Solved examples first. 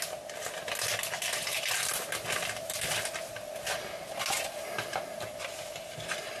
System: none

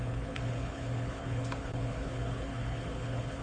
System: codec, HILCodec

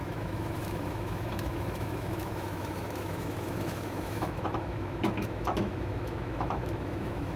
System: autoencoder, DAC-VAE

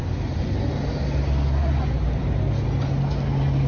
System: none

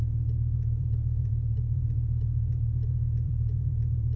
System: vocoder, BigVGAN v2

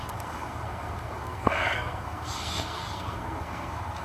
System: codec, SNAC